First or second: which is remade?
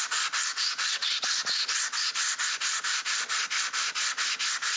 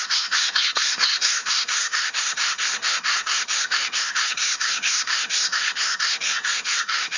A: second